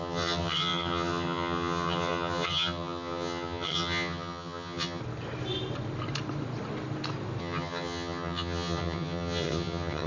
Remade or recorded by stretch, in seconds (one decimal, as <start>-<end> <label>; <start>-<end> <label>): 0.0-5.0 remade; 5.0-7.4 recorded; 7.4-10.1 remade